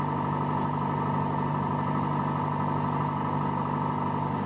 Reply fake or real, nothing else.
real